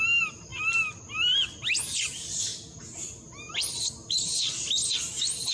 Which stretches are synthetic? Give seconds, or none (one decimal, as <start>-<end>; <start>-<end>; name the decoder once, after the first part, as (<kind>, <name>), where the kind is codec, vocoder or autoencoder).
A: none